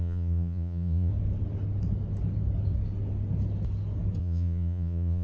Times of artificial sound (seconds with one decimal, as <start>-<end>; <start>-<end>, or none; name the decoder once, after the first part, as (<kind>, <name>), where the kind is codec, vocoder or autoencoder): 0.0-1.1 (vocoder, Vocos); 4.2-5.2